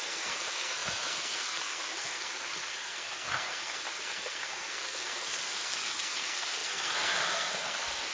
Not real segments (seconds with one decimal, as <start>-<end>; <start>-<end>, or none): 0.0-8.1